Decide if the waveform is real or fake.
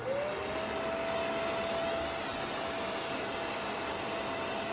real